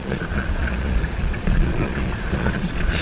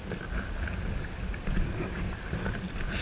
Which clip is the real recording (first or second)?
second